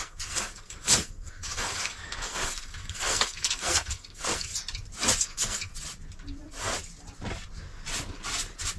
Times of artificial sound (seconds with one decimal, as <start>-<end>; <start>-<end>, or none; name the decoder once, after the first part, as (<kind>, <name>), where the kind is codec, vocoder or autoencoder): 0.0-4.5 (codec, SNAC); 5.2-5.7